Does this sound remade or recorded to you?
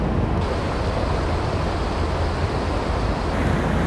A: recorded